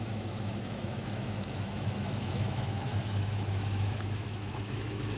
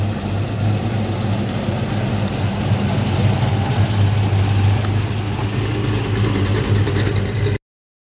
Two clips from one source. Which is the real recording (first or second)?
second